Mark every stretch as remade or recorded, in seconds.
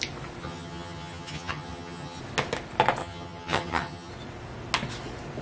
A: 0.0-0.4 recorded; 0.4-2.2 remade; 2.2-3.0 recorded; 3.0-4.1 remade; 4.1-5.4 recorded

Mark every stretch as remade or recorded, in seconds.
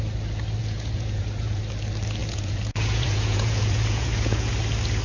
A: 0.0-0.6 recorded; 0.6-1.6 remade; 1.6-2.2 recorded; 2.2-4.5 remade; 4.5-5.0 recorded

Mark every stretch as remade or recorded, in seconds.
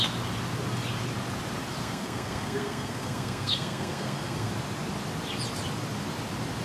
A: 0.0-1.8 recorded; 1.8-4.5 remade; 4.5-6.6 recorded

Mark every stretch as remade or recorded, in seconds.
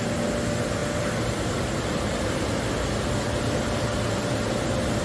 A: 0.0-5.0 recorded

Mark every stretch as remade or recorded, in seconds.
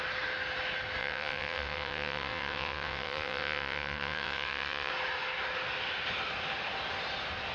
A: 0.0-1.0 recorded; 1.0-4.9 remade; 4.9-7.5 recorded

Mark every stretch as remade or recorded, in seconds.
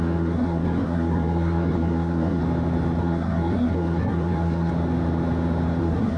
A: 0.0-2.4 remade; 2.4-3.0 recorded; 3.0-4.7 remade; 4.7-5.8 recorded; 5.8-6.2 remade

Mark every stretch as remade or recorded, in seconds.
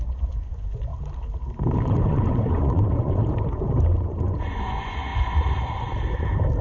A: 0.0-0.9 remade; 0.9-1.8 recorded; 1.8-3.2 remade; 3.2-3.9 recorded; 3.9-5.1 remade; 5.1-6.6 recorded